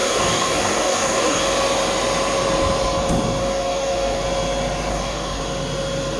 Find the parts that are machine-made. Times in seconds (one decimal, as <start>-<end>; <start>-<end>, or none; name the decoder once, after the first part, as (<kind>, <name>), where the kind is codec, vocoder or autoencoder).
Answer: 0.0-1.4 (codec, DAC); 3.4-4.2; 4.9-5.4